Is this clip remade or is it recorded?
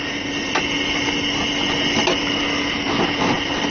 recorded